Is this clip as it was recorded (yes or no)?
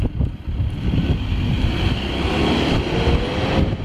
yes